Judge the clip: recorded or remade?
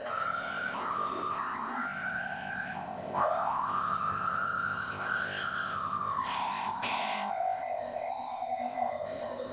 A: remade